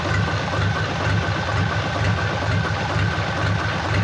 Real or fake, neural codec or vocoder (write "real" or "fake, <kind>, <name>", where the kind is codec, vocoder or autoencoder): real